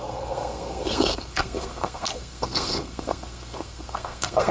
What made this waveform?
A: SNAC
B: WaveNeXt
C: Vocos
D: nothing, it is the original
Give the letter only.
A